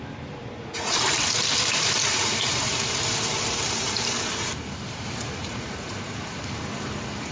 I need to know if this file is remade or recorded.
remade